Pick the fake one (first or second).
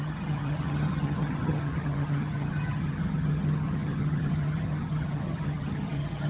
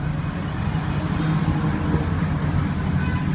first